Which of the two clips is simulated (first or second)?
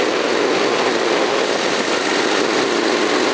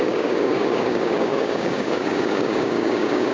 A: second